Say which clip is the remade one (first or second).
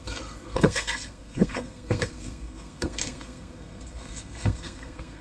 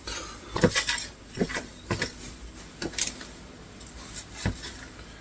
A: first